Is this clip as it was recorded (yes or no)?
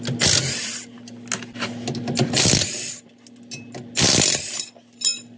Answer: yes